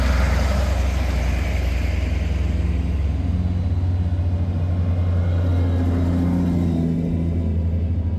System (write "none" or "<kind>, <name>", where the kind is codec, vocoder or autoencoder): none